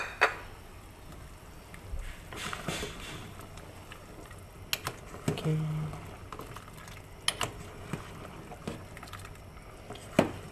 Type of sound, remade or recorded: recorded